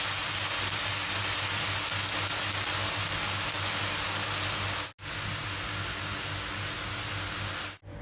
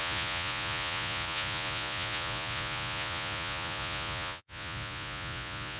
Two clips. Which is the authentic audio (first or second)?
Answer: first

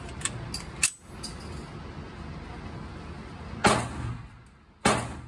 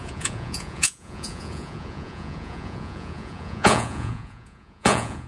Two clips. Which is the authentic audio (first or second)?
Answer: first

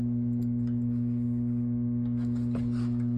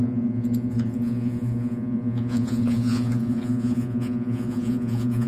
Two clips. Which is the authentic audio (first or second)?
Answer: first